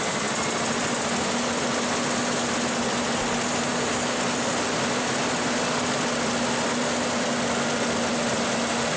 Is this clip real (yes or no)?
yes